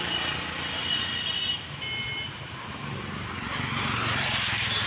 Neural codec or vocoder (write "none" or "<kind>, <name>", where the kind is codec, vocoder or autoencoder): none